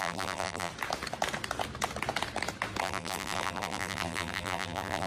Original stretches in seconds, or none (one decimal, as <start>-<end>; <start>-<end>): 0.7-2.8